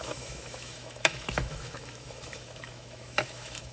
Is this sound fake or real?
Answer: fake